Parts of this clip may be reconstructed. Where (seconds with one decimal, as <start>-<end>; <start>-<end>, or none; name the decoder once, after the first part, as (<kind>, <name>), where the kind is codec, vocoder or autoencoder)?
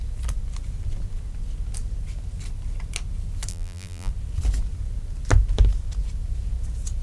3.5-4.1 (vocoder, BigVGAN v2)